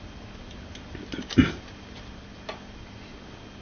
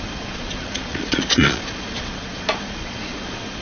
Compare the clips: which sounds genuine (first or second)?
first